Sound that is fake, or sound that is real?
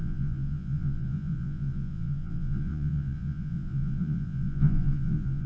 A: fake